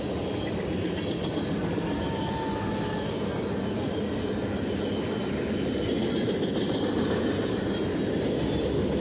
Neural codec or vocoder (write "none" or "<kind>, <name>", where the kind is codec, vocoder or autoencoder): none